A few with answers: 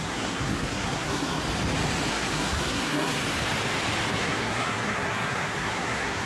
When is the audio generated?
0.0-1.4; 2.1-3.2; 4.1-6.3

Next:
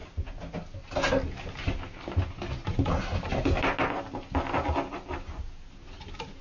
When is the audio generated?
none

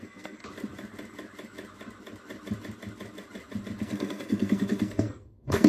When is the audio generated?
0.0-0.4; 3.8-5.7

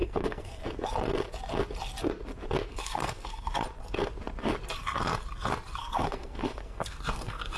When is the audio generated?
0.0-0.6; 2.7-3.5; 5.8-7.6

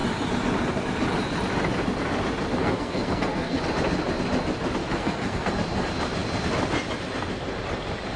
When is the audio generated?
2.6-3.6; 4.8-5.5

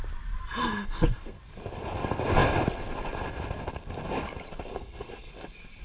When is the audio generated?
0.6-1.4; 4.7-5.3